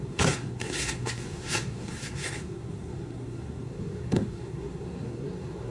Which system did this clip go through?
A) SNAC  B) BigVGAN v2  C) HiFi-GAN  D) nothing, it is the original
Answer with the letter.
A